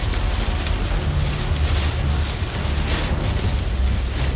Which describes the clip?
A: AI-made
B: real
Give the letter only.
B